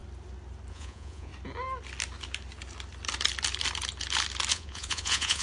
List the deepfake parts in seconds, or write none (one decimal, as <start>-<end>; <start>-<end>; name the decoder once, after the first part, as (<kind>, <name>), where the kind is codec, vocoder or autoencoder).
0.7-1.3 (vocoder, Vocos); 4.5-5.4